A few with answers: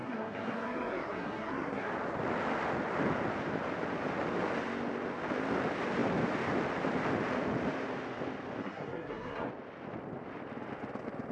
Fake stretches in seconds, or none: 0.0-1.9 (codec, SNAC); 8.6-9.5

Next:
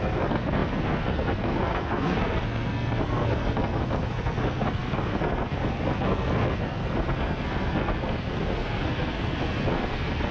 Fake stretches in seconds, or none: 0.0-10.3 (codec, SNAC)

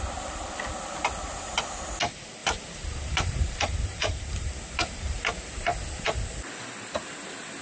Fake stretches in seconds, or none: 2.4-5.4 (vocoder, BigVGAN v2)